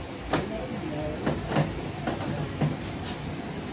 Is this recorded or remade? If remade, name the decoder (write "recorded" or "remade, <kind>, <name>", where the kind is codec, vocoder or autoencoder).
recorded